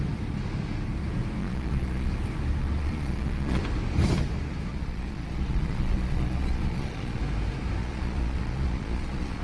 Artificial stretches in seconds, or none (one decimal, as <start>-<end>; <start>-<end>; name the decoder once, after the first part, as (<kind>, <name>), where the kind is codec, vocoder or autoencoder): 1.4-2.1 (vocoder, Vocos); 2.6-3.6; 4.7-7.2; 7.8-9.4